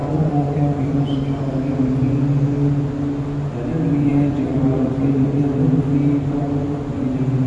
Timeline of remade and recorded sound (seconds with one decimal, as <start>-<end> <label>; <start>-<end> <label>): 0.0-1.5 remade; 1.5-4.1 recorded; 4.1-5.4 remade; 5.4-7.5 recorded